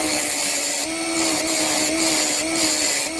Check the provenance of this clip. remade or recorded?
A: recorded